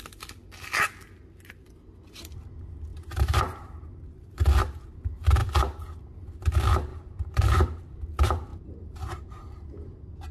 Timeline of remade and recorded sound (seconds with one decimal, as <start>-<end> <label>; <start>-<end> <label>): 0.0-2.9 recorded; 2.9-4.4 remade; 4.4-6.9 recorded; 6.9-7.8 remade; 7.8-8.5 recorded; 8.5-9.7 remade; 9.7-10.3 recorded